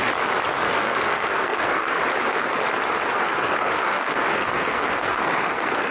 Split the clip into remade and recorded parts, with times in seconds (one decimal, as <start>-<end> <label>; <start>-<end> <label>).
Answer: 0.0-0.7 recorded; 0.7-2.0 remade; 2.0-3.1 recorded; 3.1-5.9 remade